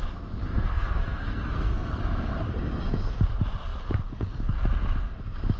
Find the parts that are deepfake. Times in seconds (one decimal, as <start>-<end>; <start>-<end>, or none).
0.5-2.0